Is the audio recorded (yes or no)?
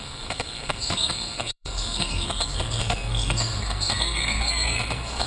no